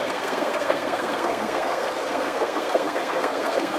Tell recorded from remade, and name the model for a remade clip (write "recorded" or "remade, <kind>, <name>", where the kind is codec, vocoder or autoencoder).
remade, codec, SNAC